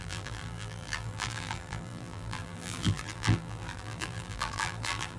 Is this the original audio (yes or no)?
no